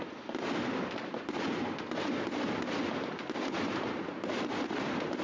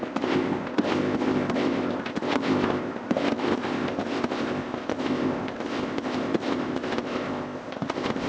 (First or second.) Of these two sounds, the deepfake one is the second